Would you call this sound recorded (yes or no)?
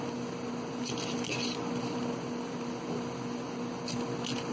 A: yes